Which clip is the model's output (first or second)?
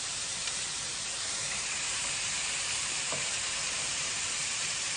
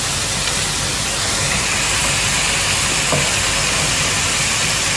first